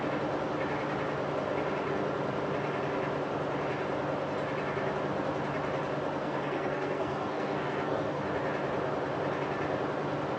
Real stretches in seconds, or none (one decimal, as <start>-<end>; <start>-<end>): 0.0-6.2; 8.2-10.4